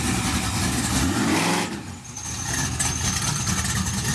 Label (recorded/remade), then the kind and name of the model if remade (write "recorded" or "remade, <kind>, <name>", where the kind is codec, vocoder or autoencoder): recorded